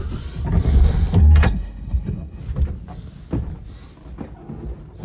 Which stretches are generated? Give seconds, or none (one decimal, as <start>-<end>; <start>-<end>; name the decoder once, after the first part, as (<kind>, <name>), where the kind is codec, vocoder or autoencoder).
1.2-2.4 (codec, SNAC)